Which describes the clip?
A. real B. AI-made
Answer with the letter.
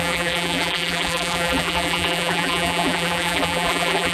B